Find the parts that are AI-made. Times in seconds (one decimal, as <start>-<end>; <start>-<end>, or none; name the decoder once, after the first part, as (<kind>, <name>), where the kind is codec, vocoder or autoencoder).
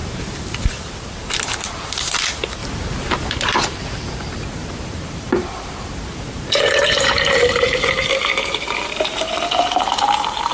0.0-2.6 (vocoder, BigVGAN v2); 3.3-10.5